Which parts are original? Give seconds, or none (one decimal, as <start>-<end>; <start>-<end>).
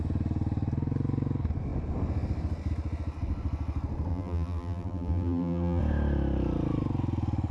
0.0-4.1; 5.8-7.5